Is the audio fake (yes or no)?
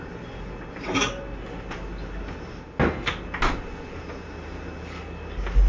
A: no